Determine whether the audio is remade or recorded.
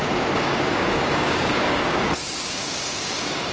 remade